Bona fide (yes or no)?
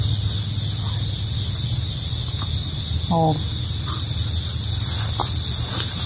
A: yes